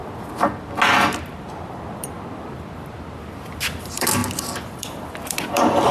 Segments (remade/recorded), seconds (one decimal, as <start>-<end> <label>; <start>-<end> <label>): 0.0-1.1 recorded; 1.1-4.2 remade; 4.2-4.8 recorded; 4.8-5.9 remade